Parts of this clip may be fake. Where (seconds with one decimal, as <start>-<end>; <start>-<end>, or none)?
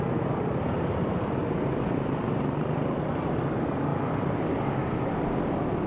none